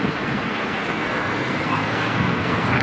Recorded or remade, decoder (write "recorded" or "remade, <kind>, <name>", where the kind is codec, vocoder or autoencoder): remade, codec, SNAC